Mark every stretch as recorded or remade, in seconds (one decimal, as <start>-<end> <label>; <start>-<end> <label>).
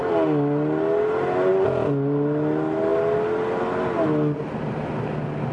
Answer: 0.0-5.5 recorded